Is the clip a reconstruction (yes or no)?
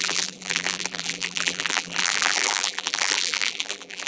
yes